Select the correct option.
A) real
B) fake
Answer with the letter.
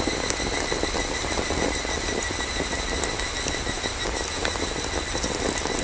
A